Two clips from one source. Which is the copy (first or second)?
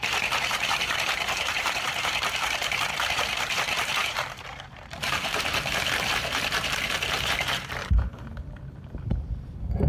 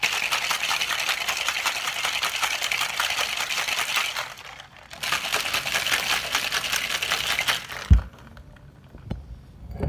first